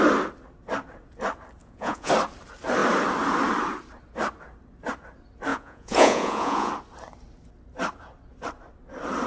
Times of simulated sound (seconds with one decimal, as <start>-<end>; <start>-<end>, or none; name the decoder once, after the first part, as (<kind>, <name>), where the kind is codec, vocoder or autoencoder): 1.6-2.1 (vocoder, Vocos); 5.5-6.7